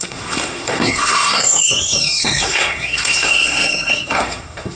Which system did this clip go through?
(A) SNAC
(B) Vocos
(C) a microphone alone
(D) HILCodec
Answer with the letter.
A